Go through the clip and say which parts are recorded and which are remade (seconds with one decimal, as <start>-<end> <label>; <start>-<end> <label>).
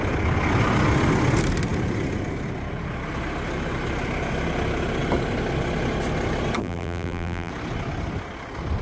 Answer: 0.0-6.6 recorded; 6.6-7.5 remade; 7.5-8.8 recorded